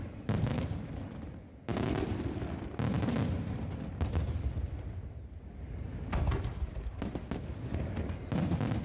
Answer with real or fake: real